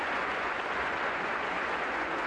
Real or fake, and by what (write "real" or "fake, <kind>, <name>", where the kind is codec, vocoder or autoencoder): fake, vocoder, Vocos